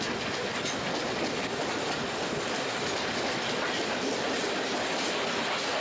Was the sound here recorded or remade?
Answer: recorded